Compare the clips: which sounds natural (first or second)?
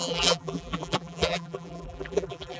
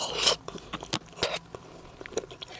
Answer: second